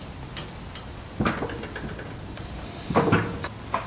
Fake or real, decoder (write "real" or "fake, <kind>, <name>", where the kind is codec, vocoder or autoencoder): real